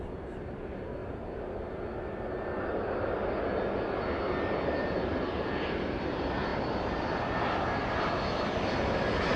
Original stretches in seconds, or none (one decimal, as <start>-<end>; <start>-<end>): 0.0-9.4